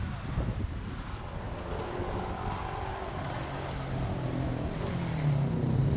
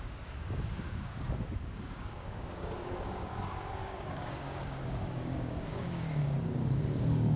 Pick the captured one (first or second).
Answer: first